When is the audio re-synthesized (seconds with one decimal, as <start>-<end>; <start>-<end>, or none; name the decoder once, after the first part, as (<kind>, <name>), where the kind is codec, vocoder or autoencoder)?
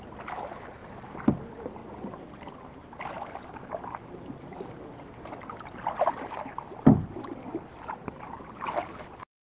none